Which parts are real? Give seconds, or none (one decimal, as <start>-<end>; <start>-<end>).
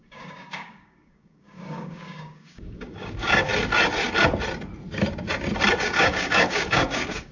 3.5-5.8